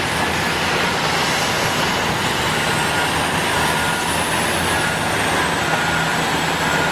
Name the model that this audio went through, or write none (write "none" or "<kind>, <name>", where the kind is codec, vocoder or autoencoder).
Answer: none